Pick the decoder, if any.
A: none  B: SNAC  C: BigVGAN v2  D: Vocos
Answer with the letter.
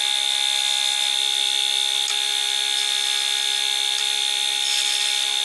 A